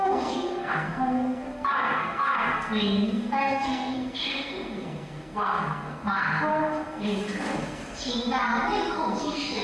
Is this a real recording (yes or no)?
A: no